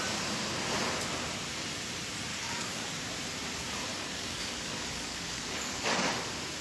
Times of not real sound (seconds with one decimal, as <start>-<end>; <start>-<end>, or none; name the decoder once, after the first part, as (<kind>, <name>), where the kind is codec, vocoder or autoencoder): 2.3-2.9 (codec, DAC); 3.9-6.0